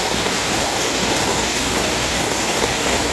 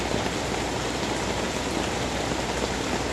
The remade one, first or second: first